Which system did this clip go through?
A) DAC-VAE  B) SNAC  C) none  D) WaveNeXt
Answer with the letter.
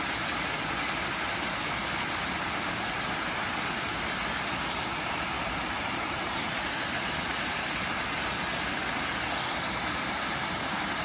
C